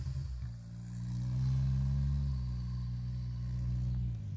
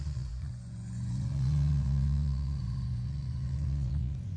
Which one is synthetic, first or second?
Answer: second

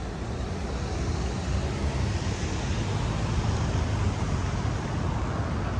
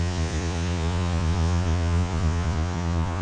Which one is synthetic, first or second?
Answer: second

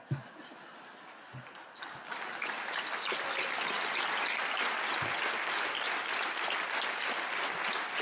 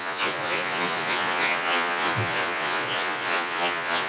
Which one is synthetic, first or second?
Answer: second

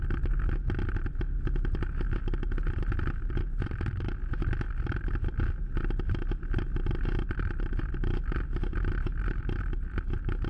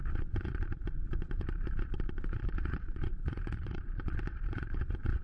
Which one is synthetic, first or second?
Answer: second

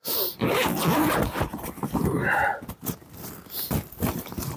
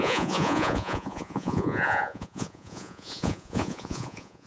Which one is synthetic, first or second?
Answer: second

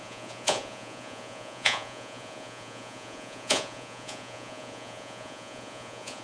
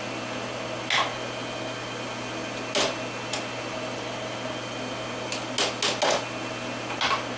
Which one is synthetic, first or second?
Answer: first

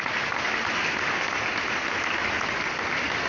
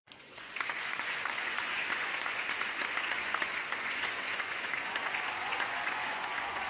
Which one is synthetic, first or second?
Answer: second